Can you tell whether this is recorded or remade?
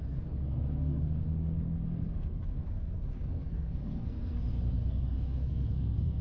remade